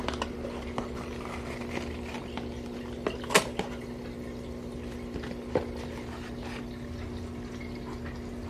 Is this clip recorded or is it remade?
recorded